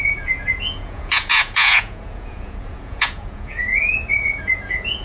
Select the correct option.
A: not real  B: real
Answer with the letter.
A